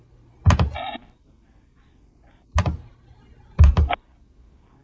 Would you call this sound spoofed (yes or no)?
no